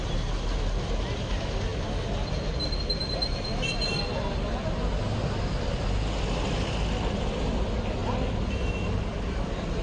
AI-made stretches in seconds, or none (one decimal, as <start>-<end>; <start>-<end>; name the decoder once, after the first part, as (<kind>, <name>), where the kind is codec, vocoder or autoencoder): none